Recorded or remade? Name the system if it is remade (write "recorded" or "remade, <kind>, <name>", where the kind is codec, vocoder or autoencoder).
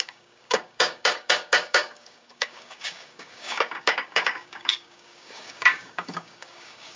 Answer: remade, codec, DAC